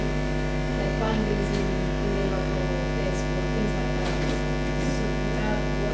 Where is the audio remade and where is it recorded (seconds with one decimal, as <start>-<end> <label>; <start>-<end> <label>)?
0.0-2.6 remade; 2.6-5.9 recorded